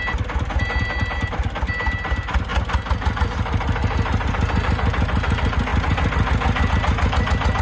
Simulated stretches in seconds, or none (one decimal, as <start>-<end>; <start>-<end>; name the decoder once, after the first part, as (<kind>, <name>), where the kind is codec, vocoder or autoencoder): none